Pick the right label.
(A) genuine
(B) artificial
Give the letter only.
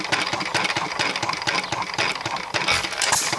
A